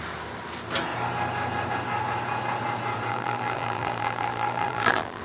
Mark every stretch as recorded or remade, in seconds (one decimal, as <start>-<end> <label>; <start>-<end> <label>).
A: 0.0-3.1 recorded; 3.1-5.2 remade